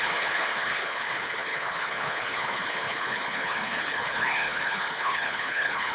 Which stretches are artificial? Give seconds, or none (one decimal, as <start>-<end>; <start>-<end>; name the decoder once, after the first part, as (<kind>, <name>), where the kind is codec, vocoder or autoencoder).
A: 0.0-5.9 (codec, HILCodec)